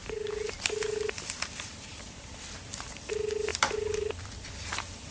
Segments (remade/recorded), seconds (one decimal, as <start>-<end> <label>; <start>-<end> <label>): 0.0-3.1 remade; 3.1-3.5 recorded; 3.5-5.1 remade